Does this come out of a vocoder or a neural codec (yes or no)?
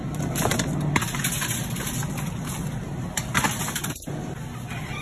no